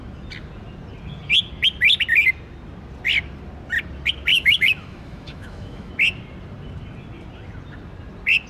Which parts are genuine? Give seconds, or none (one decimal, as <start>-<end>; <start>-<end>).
0.0-4.3; 5.9-8.5